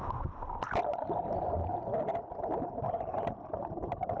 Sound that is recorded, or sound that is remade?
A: recorded